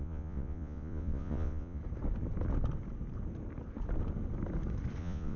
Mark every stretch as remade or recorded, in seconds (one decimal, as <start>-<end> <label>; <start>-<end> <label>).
0.0-1.8 remade; 1.8-5.0 recorded; 5.0-5.4 remade